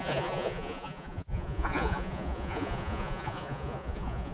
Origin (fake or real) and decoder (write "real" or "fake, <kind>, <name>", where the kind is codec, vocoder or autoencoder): fake, vocoder, Vocos